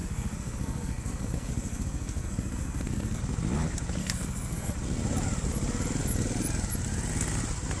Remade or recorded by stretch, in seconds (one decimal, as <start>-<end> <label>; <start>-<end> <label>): 0.0-3.2 remade; 3.2-4.0 recorded; 4.0-4.7 remade; 4.7-7.8 recorded

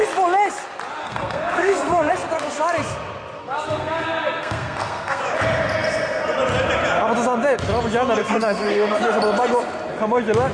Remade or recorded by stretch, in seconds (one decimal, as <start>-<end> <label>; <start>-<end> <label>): 0.0-1.0 recorded; 1.0-2.1 remade; 2.1-3.4 recorded; 3.4-5.2 remade; 5.2-8.2 recorded; 8.2-9.0 remade; 9.0-10.5 recorded

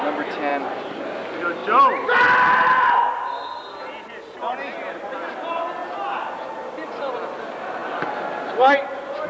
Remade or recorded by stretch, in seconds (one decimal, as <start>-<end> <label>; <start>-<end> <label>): 0.0-9.3 recorded

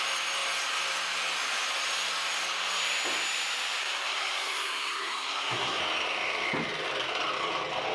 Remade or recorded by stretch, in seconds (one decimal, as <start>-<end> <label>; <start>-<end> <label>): 0.0-3.8 recorded; 3.8-5.8 remade; 5.8-7.9 recorded